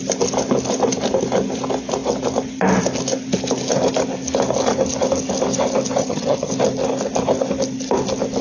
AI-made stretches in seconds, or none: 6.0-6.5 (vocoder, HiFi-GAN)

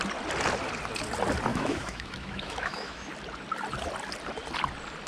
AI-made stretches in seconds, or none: 1.5-3.1 (autoencoder, DAC-VAE)